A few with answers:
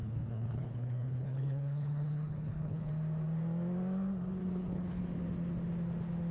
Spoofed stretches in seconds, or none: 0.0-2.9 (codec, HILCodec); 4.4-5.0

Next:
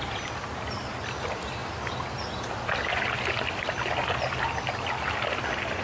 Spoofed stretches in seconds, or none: none

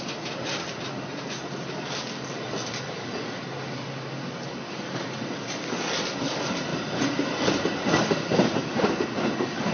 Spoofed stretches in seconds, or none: none

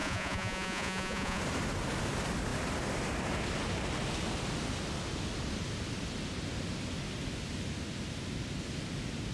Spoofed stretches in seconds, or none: 0.0-1.4 (vocoder, Vocos)